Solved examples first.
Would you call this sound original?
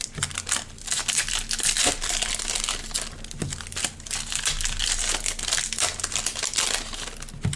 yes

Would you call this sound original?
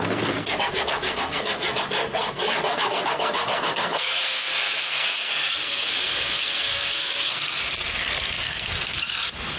no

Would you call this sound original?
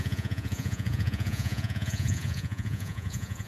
no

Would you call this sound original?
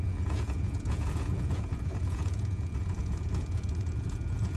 no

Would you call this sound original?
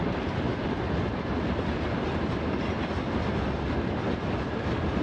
yes